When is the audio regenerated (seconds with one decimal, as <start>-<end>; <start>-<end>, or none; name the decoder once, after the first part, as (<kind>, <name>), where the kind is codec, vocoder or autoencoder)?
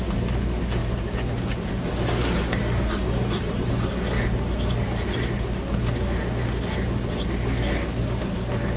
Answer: none